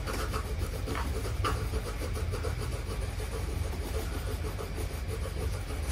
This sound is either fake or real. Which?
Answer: fake